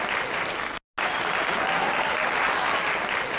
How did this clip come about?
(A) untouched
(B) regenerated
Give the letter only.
A